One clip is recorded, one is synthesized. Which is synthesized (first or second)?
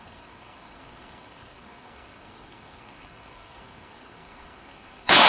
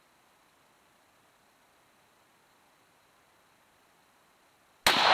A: first